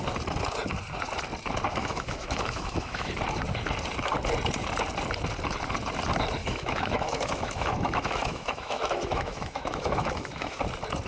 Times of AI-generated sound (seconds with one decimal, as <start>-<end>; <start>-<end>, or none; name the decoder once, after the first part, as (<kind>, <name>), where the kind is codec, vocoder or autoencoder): 1.8-3.1 (autoencoder, DAC-VAE); 6.4-10.6